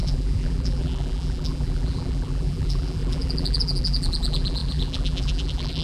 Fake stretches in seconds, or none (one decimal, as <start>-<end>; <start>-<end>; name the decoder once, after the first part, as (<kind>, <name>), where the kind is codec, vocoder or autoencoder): 0.0-5.8 (vocoder, BigVGAN v2)

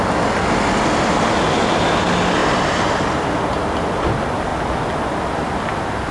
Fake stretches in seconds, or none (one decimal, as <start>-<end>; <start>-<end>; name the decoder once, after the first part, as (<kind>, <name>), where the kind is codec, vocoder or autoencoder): none

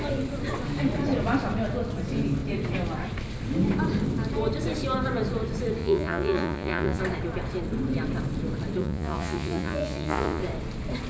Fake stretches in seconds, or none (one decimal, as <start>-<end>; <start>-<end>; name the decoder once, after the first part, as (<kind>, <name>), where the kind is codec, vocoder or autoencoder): 5.8-7.0 (vocoder, Vocos); 8.8-10.4